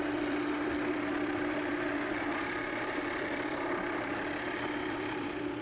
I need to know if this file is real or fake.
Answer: fake